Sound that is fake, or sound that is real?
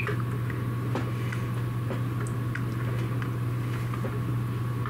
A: real